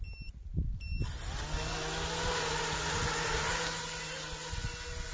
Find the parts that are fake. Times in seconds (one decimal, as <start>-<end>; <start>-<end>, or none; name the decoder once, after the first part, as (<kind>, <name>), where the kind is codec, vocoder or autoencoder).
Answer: none